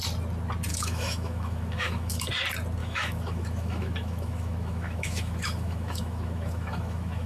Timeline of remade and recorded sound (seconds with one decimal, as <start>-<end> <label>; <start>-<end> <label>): 0.0-0.7 recorded; 0.7-2.3 remade; 2.3-2.8 recorded; 2.8-7.3 remade